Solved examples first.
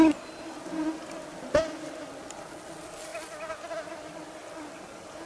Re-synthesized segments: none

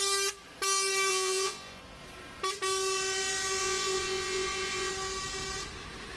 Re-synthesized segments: 1.1-1.8 (vocoder, Vocos); 3.6-4.9

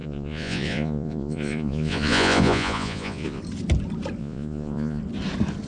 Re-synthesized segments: 0.0-3.4 (vocoder, Vocos); 4.2-5.0

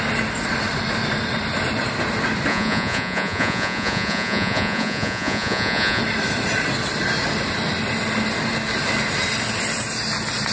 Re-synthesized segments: 2.5-6.0 (vocoder, Vocos)